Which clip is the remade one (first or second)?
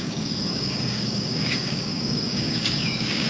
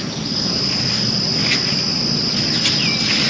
first